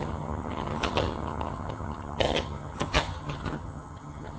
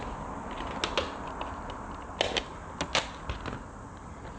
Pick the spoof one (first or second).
first